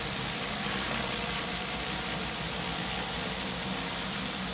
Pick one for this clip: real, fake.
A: real